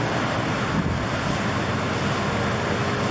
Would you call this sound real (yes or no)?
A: yes